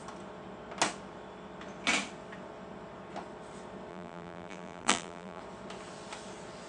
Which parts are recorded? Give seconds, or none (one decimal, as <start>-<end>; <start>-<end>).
0.0-3.9; 5.4-6.7